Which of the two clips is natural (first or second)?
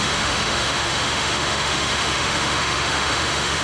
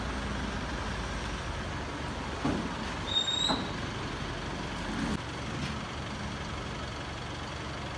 second